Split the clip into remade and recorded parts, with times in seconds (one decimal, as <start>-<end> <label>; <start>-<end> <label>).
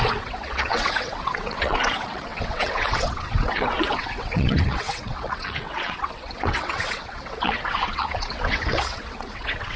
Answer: 0.0-9.8 remade